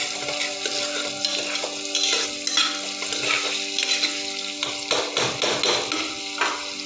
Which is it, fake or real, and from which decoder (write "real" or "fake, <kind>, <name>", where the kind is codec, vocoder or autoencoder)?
real